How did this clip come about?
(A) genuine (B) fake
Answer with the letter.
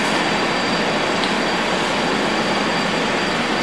A